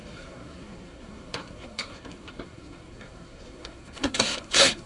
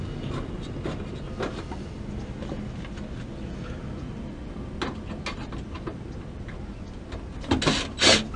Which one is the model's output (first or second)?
first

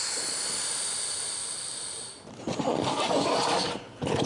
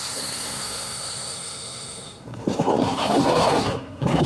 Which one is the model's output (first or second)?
second